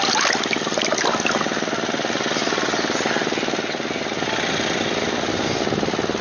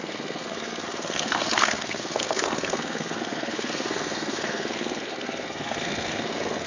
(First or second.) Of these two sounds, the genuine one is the first